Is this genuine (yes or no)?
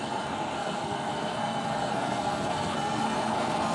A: no